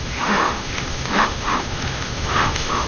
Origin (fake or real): fake